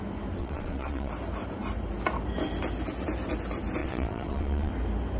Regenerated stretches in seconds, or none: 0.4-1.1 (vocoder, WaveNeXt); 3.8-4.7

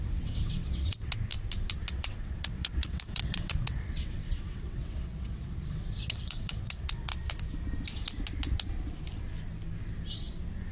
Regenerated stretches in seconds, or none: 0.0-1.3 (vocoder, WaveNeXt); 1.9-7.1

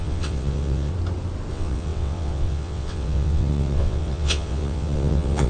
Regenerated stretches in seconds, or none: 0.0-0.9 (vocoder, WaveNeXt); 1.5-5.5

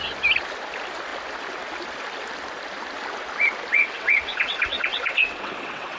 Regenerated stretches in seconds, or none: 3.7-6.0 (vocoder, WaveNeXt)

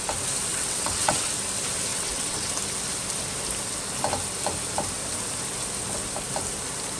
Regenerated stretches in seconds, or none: 0.5-1.3 (vocoder, WaveNeXt); 1.9-2.5

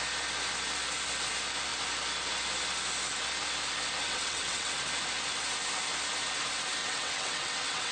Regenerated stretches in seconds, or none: 4.0-4.7 (vocoder, WaveNeXt); 6.8-7.9

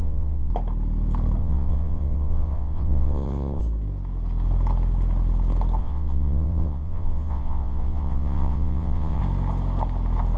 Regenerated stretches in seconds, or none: 0.0-0.5 (vocoder, WaveNeXt); 1.4-3.6; 5.8-9.2